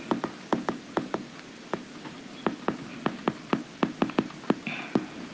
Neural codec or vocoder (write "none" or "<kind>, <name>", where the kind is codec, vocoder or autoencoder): none